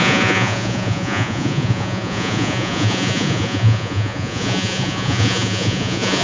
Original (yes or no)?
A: no